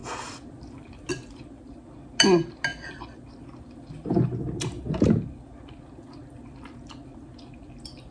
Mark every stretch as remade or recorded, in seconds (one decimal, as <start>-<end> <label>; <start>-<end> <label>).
0.0-8.1 recorded